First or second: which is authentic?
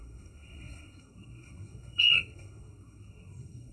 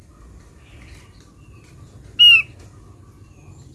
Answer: second